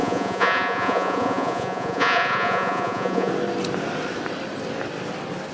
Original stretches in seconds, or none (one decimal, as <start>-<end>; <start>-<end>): 3.3-5.5